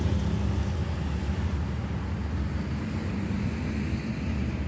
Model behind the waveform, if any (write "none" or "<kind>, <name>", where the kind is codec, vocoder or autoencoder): none